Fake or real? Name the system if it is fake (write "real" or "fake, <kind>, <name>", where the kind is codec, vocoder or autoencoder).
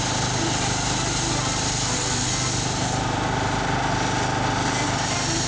real